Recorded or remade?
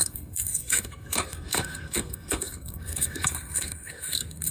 remade